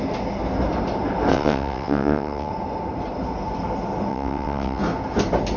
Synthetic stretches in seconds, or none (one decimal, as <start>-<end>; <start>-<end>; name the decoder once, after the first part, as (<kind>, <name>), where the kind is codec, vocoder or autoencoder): 1.3-2.5 (vocoder, WaveNeXt); 4.1-4.8